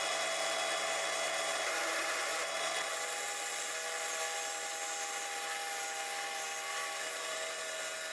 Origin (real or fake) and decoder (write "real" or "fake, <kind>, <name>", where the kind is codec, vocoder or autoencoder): real